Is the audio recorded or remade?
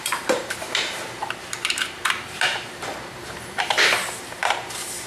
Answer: remade